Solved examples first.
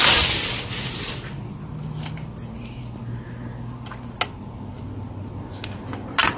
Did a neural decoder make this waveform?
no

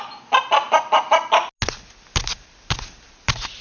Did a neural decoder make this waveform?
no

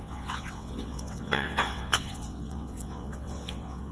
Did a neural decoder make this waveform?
yes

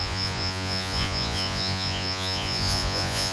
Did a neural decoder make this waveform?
yes